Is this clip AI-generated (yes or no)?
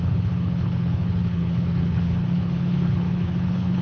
yes